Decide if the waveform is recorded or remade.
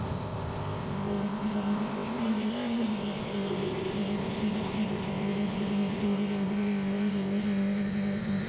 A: remade